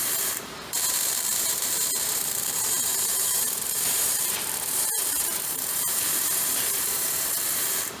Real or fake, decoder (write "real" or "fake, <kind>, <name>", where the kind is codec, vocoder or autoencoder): fake, vocoder, BigVGAN v2